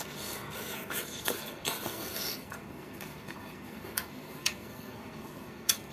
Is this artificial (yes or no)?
yes